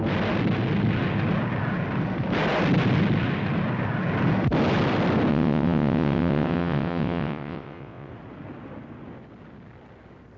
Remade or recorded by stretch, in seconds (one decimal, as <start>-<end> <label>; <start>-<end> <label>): 0.0-5.3 recorded; 5.3-8.1 remade; 8.1-10.4 recorded